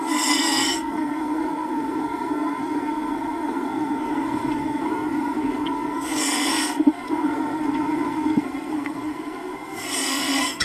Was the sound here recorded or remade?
remade